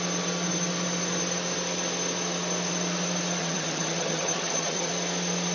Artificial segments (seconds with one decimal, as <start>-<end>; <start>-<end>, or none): 3.4-4.9